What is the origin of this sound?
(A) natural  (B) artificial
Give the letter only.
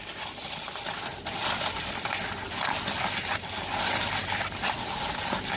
A